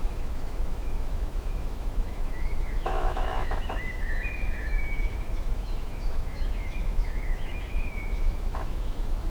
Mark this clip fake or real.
fake